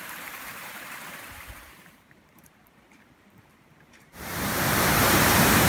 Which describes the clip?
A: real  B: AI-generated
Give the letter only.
B